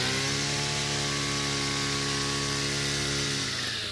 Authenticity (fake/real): real